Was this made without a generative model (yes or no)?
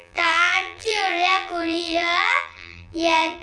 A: no